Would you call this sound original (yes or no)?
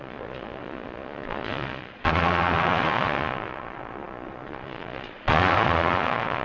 no